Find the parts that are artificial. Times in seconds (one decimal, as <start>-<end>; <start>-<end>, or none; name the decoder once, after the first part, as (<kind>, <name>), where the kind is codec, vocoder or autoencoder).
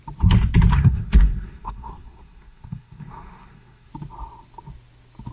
0.7-3.9 (codec, SNAC)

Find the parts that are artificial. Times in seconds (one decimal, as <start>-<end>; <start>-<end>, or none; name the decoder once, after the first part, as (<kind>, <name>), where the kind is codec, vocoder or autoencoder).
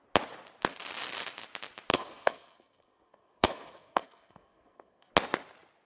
1.9-5.1 (codec, SNAC)